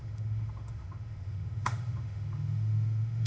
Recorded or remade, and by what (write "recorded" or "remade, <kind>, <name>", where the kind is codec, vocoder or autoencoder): remade, autoencoder, DAC-VAE